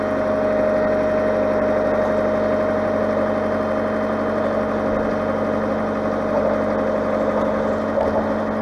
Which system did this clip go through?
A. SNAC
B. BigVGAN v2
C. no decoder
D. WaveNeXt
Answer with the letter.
C